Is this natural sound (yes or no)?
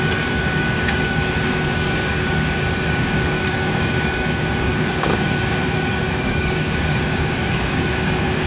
no